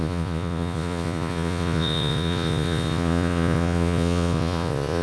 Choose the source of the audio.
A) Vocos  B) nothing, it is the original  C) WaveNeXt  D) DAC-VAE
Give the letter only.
A